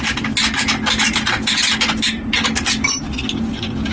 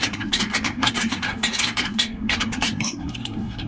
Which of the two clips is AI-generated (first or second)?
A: second